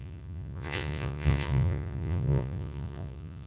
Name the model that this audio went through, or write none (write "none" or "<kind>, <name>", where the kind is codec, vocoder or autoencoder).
vocoder, Vocos